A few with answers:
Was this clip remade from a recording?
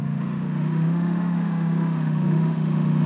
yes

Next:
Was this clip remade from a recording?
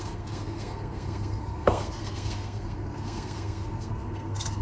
yes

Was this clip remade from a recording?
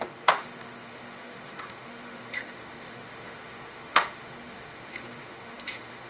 yes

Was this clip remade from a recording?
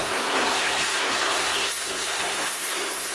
yes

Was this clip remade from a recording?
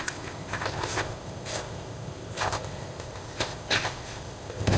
yes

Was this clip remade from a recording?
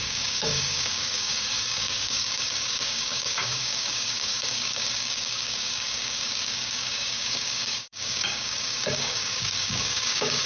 yes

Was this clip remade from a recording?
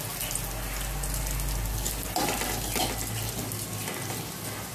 no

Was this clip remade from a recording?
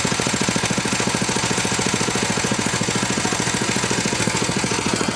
yes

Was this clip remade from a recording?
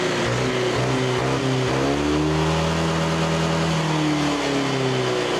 no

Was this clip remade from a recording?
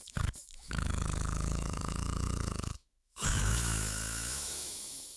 yes